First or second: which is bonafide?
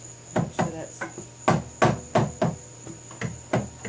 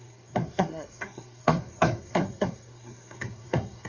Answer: first